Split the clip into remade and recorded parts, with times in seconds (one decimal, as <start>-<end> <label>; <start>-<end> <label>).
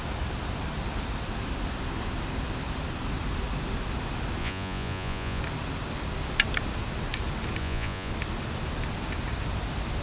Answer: 0.0-4.4 recorded; 4.4-5.4 remade; 5.4-7.6 recorded; 7.6-8.1 remade; 8.1-10.0 recorded